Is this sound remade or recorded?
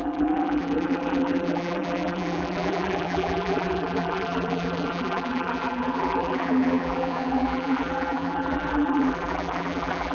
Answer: remade